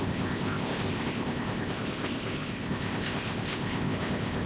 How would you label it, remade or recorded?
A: remade